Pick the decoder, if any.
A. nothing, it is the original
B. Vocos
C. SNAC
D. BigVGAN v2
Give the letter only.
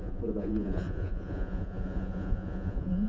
B